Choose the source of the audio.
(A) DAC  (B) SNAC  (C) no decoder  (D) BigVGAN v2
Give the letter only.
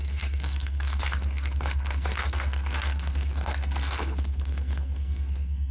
B